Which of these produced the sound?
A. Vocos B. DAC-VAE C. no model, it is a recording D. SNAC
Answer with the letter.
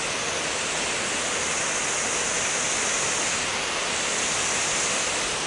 C